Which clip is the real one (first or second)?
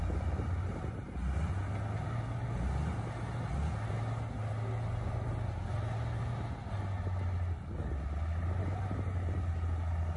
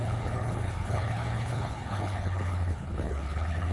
first